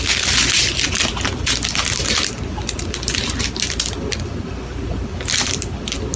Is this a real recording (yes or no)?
yes